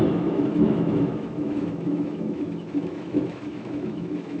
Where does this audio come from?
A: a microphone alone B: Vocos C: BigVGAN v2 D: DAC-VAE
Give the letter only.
D